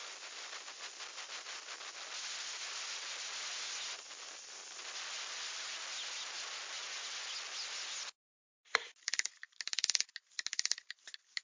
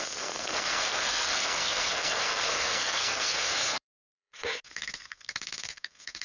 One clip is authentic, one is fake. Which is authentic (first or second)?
first